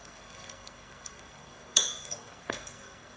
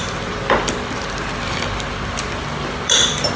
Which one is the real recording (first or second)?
second